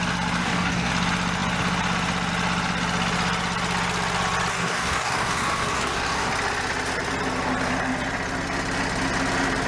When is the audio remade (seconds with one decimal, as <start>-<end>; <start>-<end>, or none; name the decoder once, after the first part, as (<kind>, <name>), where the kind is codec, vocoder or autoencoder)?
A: 0.4-0.9 (codec, DAC); 4.5-6.3